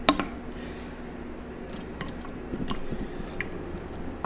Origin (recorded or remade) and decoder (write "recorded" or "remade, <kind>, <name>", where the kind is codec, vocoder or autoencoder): recorded